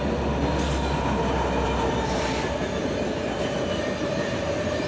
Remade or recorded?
recorded